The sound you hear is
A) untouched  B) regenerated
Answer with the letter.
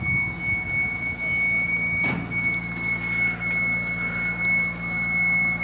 A